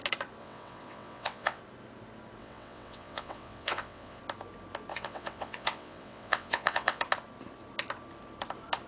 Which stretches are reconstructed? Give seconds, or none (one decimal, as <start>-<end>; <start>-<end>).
0.4-1.6; 2.4-4.2; 4.9-7.0